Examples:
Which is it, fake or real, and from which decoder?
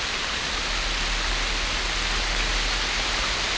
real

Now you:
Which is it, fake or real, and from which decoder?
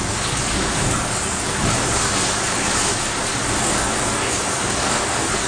fake, codec, DAC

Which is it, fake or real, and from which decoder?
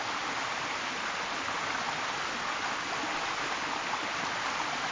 real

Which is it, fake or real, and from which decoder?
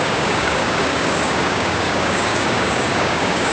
fake, codec, DAC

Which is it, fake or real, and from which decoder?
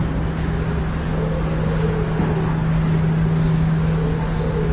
real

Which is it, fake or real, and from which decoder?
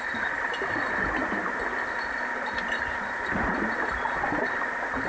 real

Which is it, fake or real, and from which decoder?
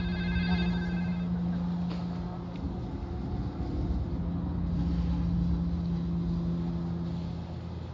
real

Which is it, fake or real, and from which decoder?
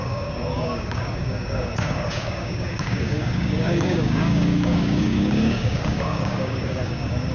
fake, codec, DAC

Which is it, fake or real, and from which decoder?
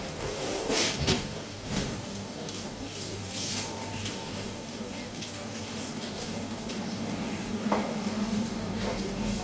fake, codec, DAC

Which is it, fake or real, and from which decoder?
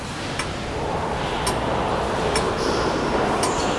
real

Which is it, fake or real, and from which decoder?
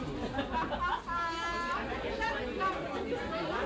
real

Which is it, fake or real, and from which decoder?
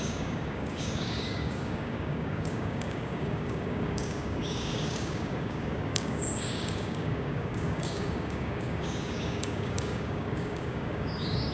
fake, codec, DAC